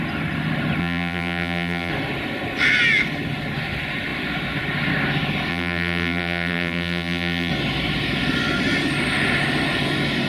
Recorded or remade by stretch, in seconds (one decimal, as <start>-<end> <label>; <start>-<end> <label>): 0.0-0.8 recorded; 0.8-1.9 remade; 1.9-5.5 recorded; 5.5-7.5 remade; 7.5-10.3 recorded